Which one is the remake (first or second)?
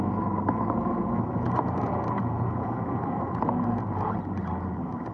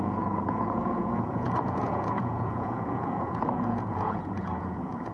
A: second